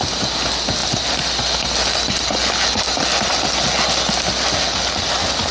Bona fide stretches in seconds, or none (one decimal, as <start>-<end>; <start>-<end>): 0.0-5.5